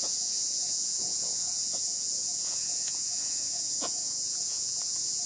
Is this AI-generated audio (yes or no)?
yes